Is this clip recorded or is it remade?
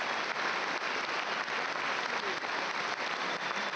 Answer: recorded